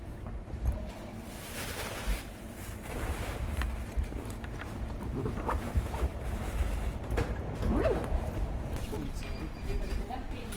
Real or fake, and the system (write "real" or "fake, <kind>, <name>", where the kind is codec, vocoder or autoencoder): fake, vocoder, BigVGAN v2